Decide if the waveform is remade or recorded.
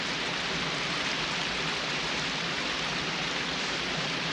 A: remade